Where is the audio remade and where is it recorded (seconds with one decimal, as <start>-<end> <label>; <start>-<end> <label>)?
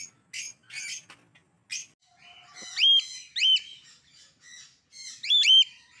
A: 0.0-6.0 recorded